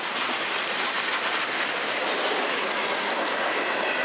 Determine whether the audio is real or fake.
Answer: real